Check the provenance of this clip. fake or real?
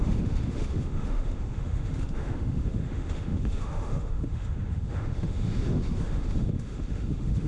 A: fake